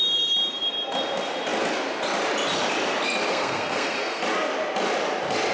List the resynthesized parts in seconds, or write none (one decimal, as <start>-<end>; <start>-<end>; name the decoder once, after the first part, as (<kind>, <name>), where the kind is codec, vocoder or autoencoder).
3.3-4.2 (codec, SNAC)